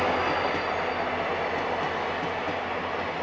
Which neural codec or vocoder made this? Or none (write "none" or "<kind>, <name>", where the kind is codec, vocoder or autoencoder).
none